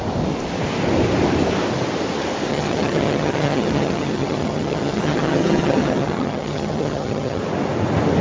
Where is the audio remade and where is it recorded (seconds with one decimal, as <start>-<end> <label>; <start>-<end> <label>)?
0.0-2.5 recorded; 2.5-7.4 remade; 7.4-8.2 recorded